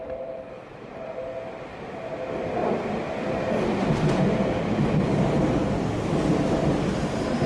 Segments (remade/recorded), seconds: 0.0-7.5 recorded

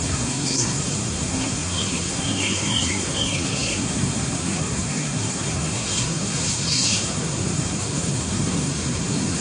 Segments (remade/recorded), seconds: 0.0-9.4 remade

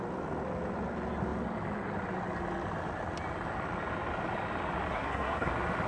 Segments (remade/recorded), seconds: 0.0-4.9 recorded; 4.9-5.5 remade; 5.5-5.9 recorded

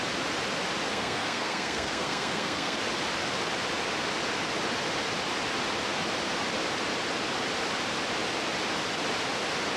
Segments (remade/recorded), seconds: 0.0-0.9 recorded; 0.9-2.8 remade; 2.8-9.8 recorded

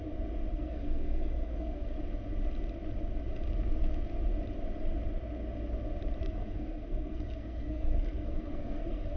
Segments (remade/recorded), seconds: 0.0-0.5 recorded; 0.5-1.9 remade; 1.9-6.2 recorded; 6.2-9.2 remade

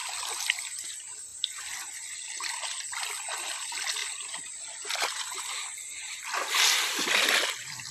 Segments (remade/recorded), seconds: 0.0-7.9 recorded

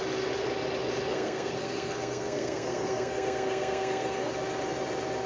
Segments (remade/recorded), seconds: 0.0-1.1 recorded; 1.1-4.3 remade; 4.3-5.3 recorded

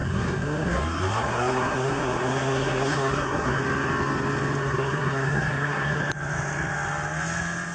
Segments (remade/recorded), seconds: 0.0-3.6 remade; 3.6-4.6 recorded; 4.6-6.0 remade; 6.0-7.7 recorded